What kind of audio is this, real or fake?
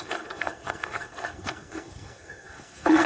fake